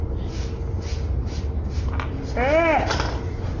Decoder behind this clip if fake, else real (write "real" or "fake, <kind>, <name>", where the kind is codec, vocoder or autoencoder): real